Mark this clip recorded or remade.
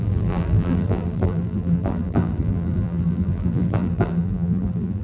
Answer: remade